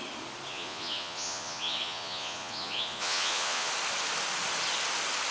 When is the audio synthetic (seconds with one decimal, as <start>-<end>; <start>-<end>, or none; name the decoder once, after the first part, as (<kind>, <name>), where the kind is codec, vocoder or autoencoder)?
0.5-3.7 (vocoder, Vocos)